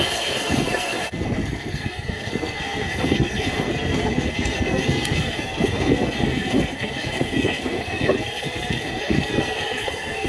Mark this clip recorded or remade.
remade